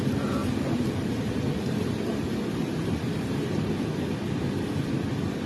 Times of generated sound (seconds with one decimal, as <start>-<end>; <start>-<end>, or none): 0.4-3.7